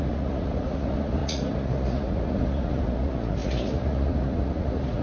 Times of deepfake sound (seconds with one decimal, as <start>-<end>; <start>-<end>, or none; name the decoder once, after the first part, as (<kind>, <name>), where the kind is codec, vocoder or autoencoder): 0.0-5.0 (vocoder, Vocos)